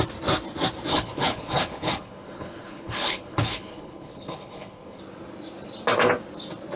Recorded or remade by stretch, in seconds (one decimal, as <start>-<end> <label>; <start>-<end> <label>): 0.0-0.9 recorded; 0.9-5.0 remade; 5.0-6.8 recorded